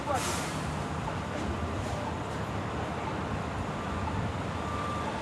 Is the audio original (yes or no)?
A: yes